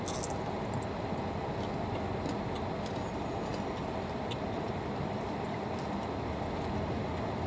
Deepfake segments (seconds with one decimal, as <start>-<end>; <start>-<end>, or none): none